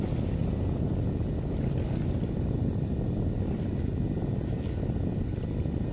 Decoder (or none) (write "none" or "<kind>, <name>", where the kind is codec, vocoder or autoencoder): none